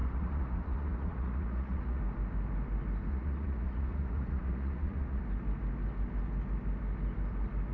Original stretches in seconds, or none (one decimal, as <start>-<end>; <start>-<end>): 2.0-3.1; 5.2-7.7